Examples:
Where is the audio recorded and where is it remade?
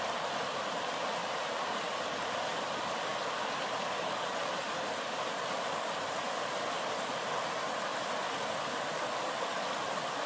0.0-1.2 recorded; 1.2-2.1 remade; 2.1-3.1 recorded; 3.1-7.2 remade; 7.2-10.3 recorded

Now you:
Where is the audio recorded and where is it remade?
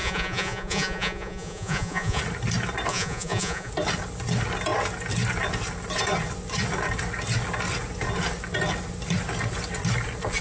0.0-2.2 remade; 2.2-2.9 recorded; 2.9-3.7 remade; 3.7-10.4 recorded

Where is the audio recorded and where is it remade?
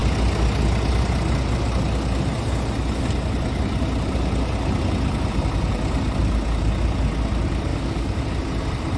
0.0-7.7 recorded; 7.7-8.2 remade; 8.2-9.0 recorded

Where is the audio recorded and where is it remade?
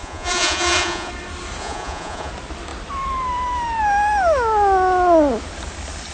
0.0-1.1 remade; 1.1-1.6 recorded; 1.6-2.3 remade; 2.3-6.1 recorded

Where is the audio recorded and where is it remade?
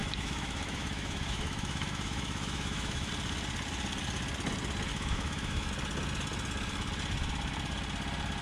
0.0-3.1 remade; 3.1-4.9 recorded; 4.9-5.7 remade; 5.7-8.4 recorded